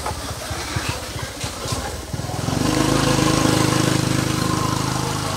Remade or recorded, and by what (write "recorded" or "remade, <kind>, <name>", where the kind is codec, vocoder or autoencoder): recorded